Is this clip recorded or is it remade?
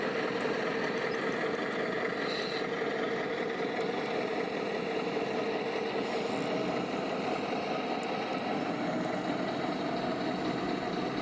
recorded